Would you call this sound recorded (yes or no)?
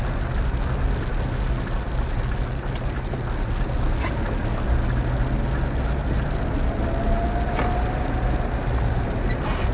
yes